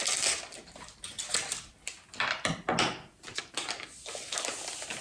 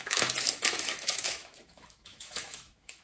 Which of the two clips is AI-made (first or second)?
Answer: second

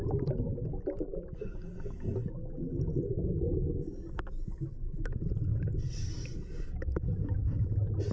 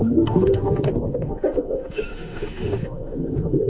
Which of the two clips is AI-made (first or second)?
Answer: second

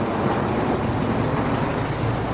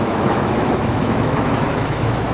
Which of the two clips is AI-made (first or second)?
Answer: second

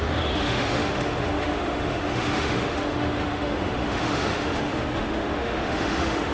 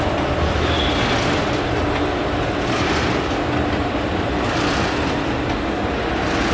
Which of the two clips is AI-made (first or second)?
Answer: first